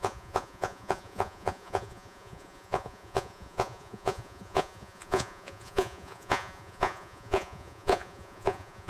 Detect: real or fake fake